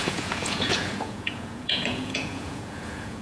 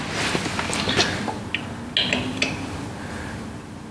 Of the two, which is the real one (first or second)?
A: second